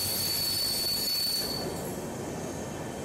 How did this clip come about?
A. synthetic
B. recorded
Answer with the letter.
B